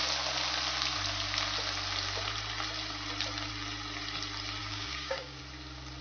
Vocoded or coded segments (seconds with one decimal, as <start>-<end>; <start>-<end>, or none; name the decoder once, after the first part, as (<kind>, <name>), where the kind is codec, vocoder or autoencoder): 4.6-5.4 (codec, DAC)